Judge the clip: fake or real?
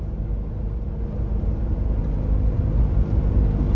real